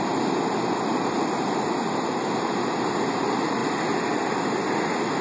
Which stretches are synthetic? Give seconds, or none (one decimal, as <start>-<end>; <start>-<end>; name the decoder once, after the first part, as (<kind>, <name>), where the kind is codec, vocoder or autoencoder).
none